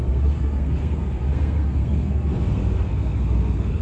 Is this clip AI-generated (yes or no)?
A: yes